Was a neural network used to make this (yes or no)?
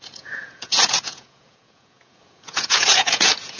yes